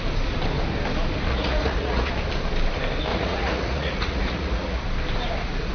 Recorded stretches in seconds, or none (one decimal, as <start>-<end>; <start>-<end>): 0.0-1.3; 2.1-3.1; 4.8-5.7